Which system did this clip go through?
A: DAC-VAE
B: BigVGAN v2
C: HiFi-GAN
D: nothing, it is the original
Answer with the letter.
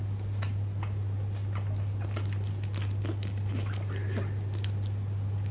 D